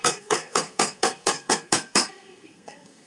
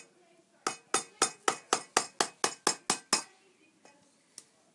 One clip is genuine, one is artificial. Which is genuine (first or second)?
second